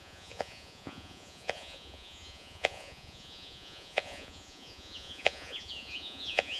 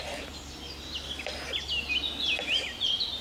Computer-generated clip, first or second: first